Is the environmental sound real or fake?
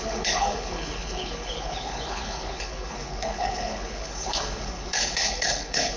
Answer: fake